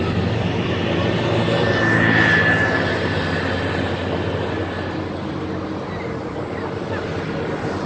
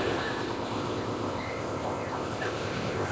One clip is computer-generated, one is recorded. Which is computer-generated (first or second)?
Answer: second